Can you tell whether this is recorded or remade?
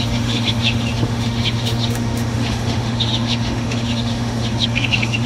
remade